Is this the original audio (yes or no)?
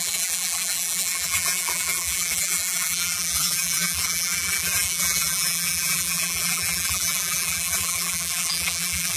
no